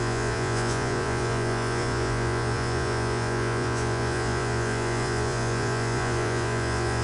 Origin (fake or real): fake